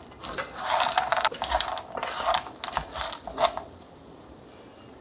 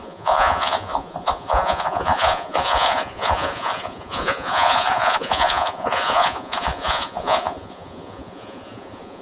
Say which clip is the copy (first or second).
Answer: second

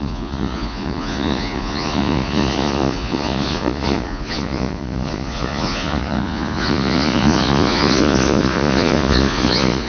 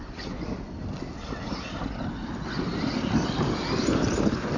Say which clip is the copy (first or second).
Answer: first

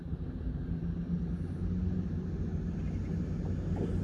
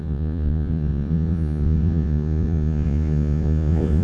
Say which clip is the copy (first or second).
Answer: second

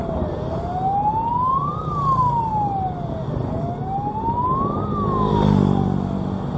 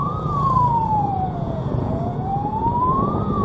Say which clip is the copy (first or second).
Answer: second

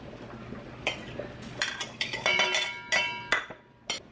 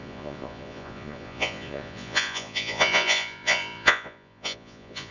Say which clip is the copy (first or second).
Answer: second